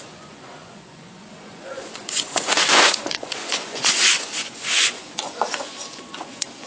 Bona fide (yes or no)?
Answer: no